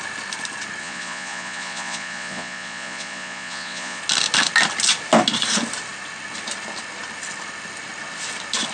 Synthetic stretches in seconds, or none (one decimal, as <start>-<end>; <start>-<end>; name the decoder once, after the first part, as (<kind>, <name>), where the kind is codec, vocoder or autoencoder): 0.8-4.0 (vocoder, Vocos)

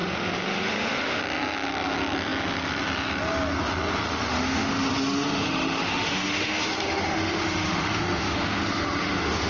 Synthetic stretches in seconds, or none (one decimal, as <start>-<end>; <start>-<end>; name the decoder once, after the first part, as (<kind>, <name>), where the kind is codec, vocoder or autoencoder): 0.0-1.2 (autoencoder, DAC-VAE); 4.3-9.5

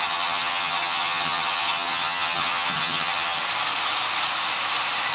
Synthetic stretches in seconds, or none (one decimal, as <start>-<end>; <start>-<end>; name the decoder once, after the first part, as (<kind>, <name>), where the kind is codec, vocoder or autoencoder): 0.0-3.4 (vocoder, HiFi-GAN)

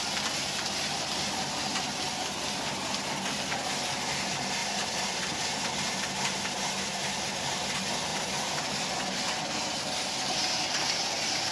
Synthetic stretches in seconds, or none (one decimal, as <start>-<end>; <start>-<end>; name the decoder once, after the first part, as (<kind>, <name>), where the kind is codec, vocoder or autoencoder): 4.6-5.7 (vocoder, BigVGAN v2); 8.1-9.4

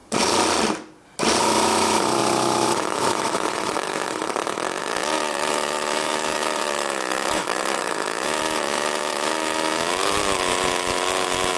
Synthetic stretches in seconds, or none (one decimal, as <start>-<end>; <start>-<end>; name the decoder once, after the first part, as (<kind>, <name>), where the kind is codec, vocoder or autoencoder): 1.4-11.6 (autoencoder, DAC-VAE)

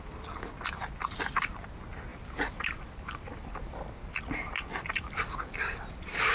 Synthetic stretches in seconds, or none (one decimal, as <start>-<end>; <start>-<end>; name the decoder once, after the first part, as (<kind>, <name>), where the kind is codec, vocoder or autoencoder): 2.1-6.3 (vocoder, BigVGAN v2)

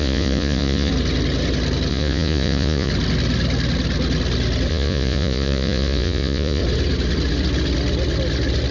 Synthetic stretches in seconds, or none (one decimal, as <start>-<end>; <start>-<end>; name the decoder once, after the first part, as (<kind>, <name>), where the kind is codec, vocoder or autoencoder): 0.0-0.9 (vocoder, Vocos); 1.9-2.9; 4.7-6.6